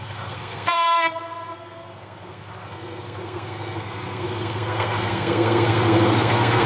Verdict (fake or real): fake